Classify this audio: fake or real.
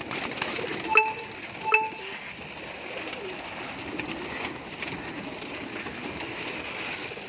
real